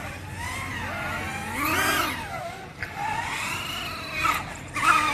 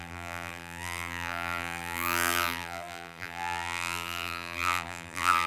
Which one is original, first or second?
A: first